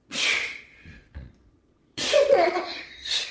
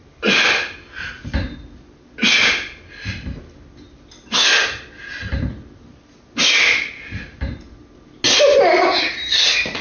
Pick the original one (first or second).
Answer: second